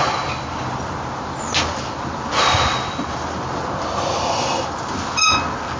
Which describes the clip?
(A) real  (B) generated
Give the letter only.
A